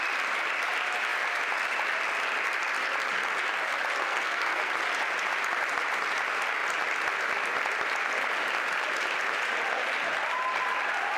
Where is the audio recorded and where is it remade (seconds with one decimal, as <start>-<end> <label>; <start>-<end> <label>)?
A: 0.0-4.0 recorded; 4.0-4.7 remade; 4.7-11.2 recorded